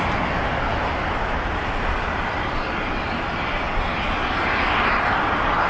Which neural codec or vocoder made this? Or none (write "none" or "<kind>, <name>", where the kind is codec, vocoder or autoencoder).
none